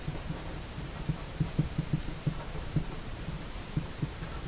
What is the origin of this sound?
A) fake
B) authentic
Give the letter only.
A